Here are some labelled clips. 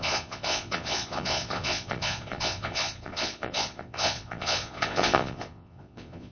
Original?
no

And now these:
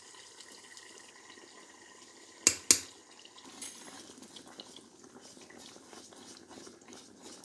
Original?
yes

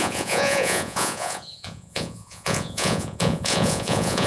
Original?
no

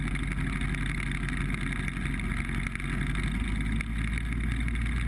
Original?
yes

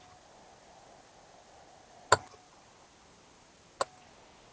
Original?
yes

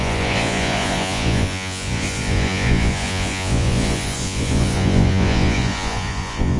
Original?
no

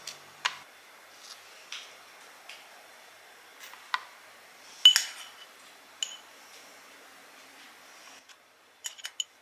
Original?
yes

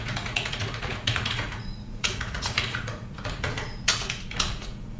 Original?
no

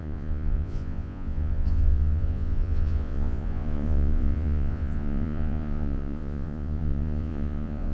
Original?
no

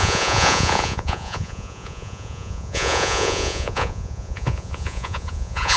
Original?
no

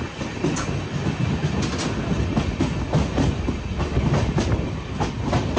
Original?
yes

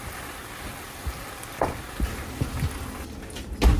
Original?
yes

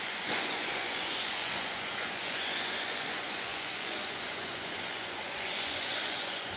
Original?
no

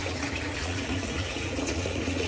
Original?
no